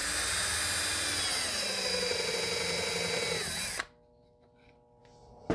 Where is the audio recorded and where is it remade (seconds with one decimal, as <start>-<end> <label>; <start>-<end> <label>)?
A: 0.0-5.5 recorded